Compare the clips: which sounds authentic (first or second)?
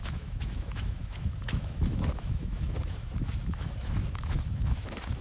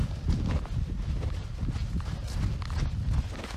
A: second